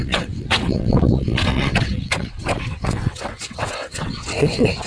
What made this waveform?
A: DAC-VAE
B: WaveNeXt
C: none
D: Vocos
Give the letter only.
B